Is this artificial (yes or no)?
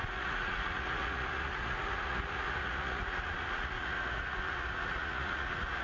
yes